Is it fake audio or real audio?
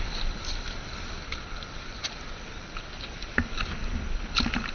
real